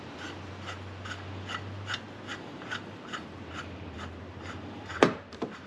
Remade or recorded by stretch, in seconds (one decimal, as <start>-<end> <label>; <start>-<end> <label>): 0.0-2.3 recorded; 2.3-5.7 remade